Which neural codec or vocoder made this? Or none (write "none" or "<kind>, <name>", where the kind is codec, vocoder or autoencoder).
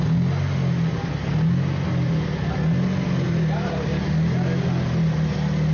none